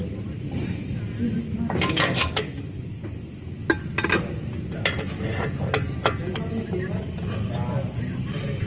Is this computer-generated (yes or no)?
no